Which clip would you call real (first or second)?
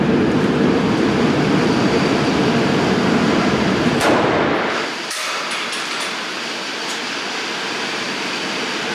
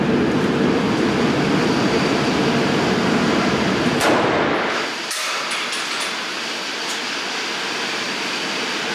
second